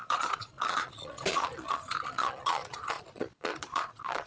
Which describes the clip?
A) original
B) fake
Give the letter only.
B